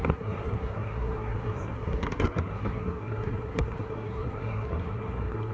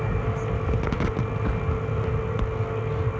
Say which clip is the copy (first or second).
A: first